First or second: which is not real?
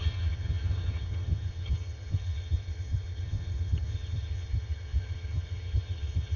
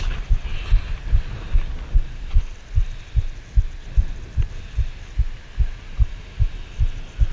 first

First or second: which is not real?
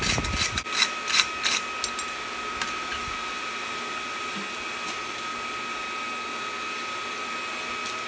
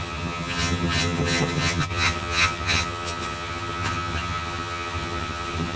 second